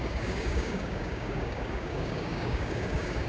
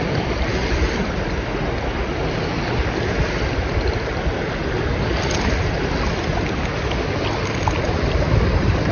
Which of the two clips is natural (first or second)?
second